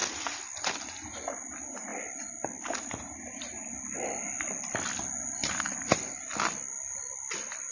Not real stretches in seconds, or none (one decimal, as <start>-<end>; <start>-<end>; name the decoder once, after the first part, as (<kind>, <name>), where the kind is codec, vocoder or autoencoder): none